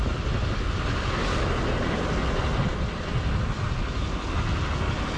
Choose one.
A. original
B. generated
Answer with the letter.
A